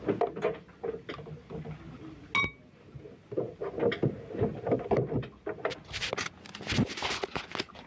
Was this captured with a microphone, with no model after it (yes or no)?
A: yes